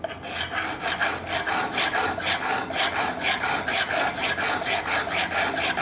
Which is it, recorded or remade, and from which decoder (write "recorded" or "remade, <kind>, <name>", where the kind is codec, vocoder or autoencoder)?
recorded